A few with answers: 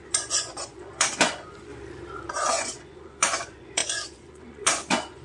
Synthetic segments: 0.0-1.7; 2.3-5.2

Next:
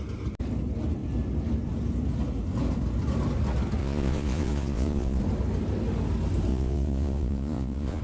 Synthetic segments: 3.8-5.2; 6.5-8.0

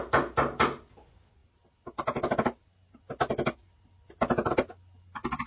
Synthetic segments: none

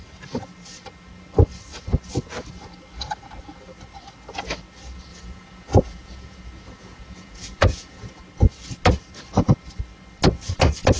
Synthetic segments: 5.1-8.2

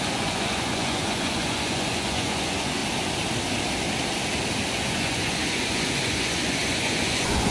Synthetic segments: 0.0-2.8; 4.7-7.5

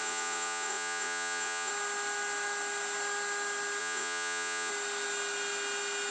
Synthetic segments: 0.0-1.7; 3.8-4.7

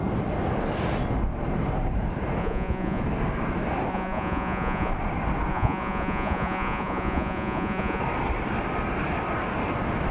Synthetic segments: 2.4-3.0; 3.9-4.9; 5.5-8.0